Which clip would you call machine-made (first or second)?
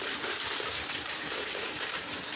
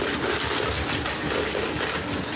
first